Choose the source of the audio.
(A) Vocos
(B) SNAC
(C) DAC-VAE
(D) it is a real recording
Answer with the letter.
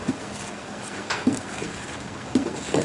B